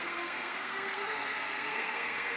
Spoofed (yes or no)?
yes